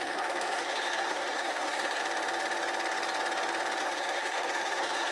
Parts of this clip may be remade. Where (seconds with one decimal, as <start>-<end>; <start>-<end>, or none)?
0.0-2.0; 3.8-5.1

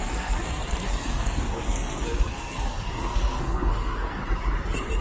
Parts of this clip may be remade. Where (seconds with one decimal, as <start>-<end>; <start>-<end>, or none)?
0.0-4.2

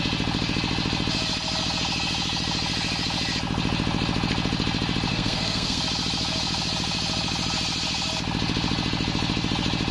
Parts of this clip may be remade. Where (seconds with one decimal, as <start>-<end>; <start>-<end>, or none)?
5.1-5.8

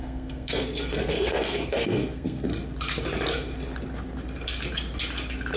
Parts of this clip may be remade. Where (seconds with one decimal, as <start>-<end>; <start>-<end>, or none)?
0.0-2.5

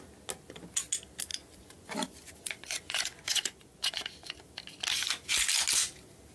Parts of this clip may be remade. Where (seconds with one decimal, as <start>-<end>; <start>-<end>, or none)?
1.3-4.4

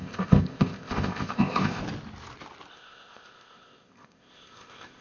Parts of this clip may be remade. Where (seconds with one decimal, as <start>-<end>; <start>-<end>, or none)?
0.0-1.8; 2.7-5.0

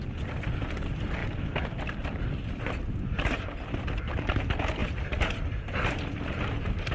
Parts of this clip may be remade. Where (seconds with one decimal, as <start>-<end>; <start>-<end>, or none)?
1.2-2.6; 4.8-6.0

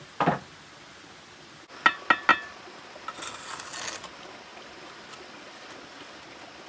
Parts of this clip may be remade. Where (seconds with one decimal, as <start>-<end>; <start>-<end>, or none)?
4.5-5.6